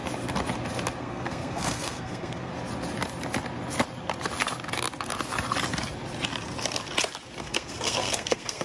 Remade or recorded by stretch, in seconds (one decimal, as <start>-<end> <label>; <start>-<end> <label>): 0.0-1.0 recorded; 1.0-2.5 remade; 2.5-7.4 recorded; 7.4-8.6 remade